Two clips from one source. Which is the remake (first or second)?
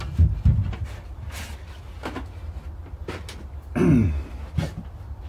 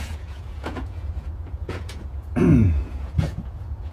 second